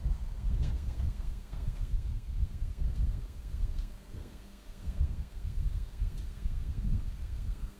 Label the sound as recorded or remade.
remade